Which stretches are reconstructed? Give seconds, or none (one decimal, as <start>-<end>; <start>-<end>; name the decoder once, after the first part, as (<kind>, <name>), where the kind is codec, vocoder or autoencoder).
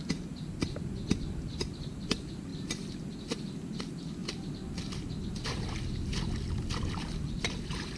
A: none